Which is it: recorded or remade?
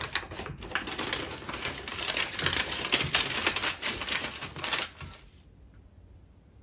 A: recorded